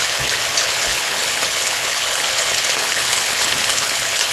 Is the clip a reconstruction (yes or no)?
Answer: yes